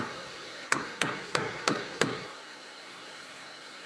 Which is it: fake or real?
fake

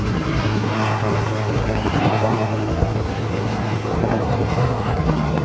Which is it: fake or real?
fake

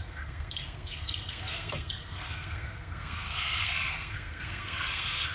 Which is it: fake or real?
fake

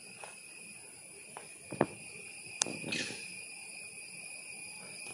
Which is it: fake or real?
real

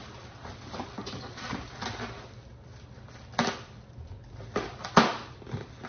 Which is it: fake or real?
real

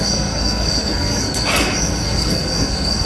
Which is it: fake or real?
fake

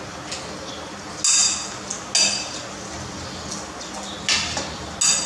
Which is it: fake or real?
real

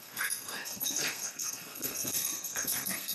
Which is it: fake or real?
fake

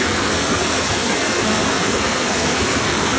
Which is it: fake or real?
fake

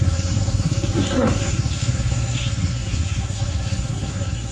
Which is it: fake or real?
fake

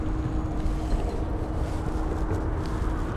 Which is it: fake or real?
real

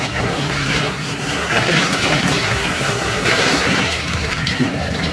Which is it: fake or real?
fake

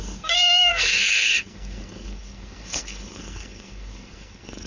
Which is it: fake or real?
fake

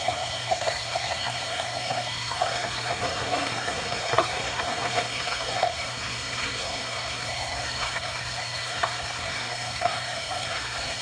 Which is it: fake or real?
fake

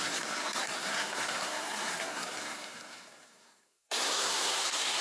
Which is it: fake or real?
fake